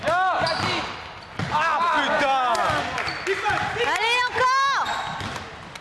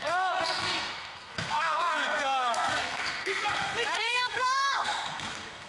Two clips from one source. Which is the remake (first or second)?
second